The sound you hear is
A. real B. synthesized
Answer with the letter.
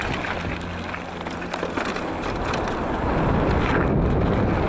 A